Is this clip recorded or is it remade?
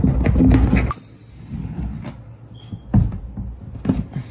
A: recorded